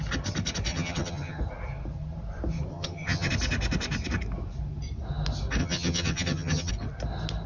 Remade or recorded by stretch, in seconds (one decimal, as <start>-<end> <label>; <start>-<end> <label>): 0.0-0.7 recorded; 0.7-1.4 remade; 1.4-2.7 recorded; 2.7-3.3 remade; 3.3-5.6 recorded; 5.6-6.7 remade; 6.7-7.5 recorded